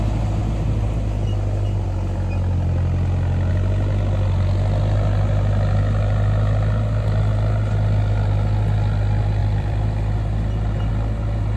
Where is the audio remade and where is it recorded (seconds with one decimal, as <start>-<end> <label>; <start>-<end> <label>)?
0.0-9.4 recorded; 9.4-10.9 remade; 10.9-11.6 recorded